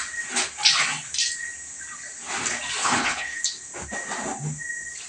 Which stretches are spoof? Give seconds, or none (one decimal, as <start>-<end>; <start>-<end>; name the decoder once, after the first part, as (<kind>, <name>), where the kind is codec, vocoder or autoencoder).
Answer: 2.8-3.4 (codec, HILCodec)